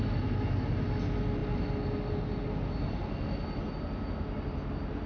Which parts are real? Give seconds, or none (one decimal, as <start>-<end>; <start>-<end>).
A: 0.0-5.1